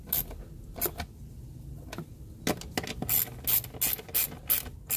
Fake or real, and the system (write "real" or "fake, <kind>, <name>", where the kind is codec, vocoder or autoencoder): real